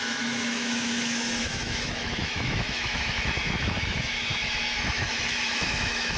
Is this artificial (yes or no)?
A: yes